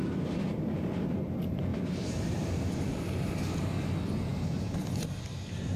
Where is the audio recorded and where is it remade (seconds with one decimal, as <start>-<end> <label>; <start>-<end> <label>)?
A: 0.0-1.7 recorded; 1.7-3.0 remade; 3.0-5.8 recorded